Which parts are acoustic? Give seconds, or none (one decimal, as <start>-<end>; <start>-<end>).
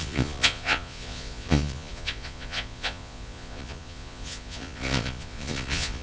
none